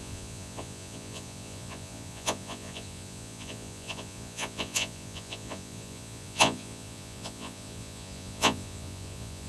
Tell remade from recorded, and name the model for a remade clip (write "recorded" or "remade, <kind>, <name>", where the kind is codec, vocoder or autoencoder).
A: remade, vocoder, Vocos